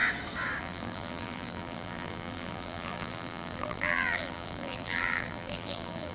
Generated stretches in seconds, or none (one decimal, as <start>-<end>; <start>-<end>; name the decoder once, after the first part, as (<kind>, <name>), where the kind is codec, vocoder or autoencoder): 0.6-6.1 (vocoder, BigVGAN v2)